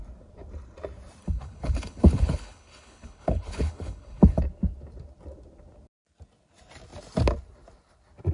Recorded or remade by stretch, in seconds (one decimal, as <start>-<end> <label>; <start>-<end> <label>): 0.0-1.2 recorded; 1.2-4.4 remade; 4.4-8.3 recorded